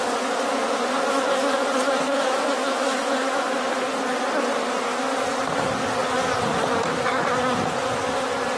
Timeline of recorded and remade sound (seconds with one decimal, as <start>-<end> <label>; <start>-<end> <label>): 0.0-2.1 recorded; 2.1-3.5 remade; 3.5-8.6 recorded